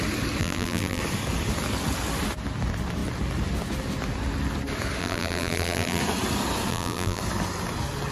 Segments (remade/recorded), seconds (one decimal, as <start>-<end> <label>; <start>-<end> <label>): 0.0-0.4 recorded; 0.4-1.0 remade; 1.0-5.0 recorded; 5.0-6.0 remade; 6.0-6.7 recorded; 6.7-7.2 remade; 7.2-8.1 recorded